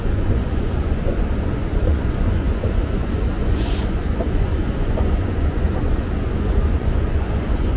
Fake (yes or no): yes